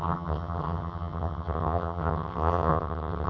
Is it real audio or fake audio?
fake